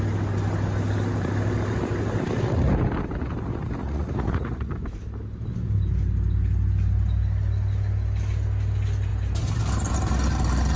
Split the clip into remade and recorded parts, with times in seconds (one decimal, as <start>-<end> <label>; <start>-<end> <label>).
0.0-3.8 recorded; 3.8-4.7 remade; 4.7-10.8 recorded